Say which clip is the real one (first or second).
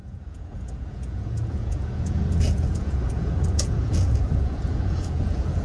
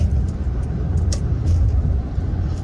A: second